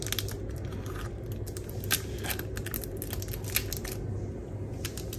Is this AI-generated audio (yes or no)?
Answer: no